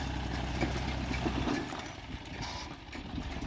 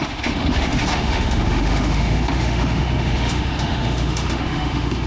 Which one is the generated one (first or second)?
second